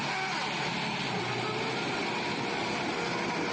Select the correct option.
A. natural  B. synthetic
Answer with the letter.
A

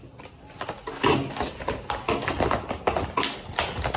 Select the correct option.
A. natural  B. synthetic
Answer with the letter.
A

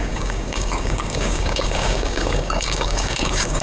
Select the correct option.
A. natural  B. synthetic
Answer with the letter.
B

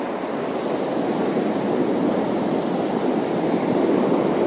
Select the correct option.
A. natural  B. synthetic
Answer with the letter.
A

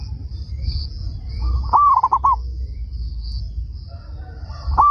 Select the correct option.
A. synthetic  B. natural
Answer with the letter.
B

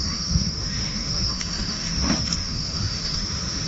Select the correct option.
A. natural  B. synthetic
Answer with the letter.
B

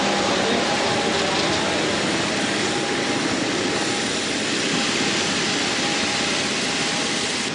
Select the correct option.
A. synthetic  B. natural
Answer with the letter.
A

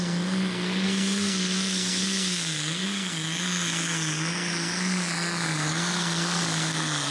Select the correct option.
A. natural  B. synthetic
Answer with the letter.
B